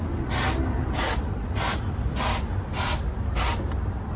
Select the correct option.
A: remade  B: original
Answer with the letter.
B